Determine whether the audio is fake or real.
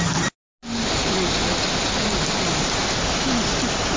real